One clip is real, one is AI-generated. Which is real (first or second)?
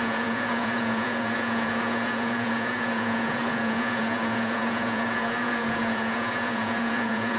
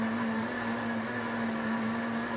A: second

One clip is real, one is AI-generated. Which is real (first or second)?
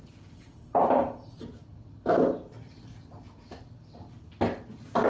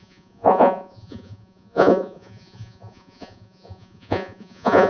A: first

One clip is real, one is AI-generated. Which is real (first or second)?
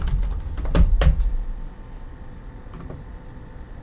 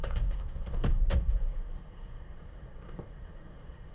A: first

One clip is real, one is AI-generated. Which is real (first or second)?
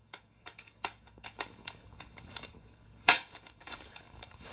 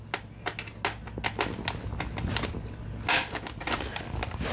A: second